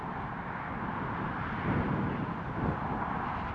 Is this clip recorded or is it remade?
recorded